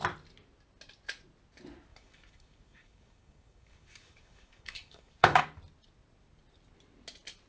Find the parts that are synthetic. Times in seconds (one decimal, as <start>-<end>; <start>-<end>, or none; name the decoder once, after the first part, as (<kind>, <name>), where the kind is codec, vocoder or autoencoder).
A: 1.9-5.4 (codec, DAC)